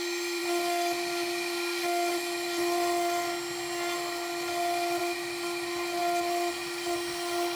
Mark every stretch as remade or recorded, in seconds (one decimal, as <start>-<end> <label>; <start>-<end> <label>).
0.0-7.6 recorded